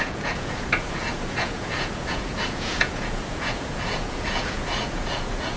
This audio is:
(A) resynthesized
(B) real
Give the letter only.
A